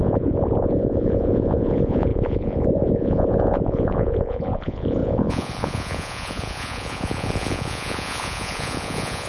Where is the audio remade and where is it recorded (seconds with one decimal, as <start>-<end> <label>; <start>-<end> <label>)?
0.0-9.3 remade